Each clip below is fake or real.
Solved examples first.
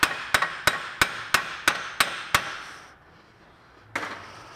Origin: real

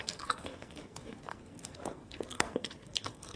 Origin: fake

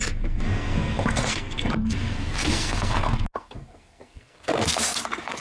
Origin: fake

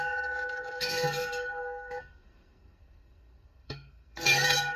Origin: fake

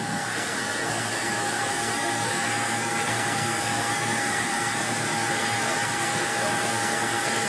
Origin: fake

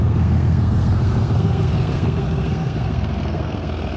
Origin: fake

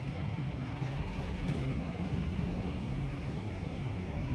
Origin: fake